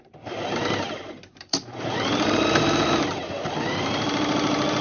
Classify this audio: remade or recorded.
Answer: remade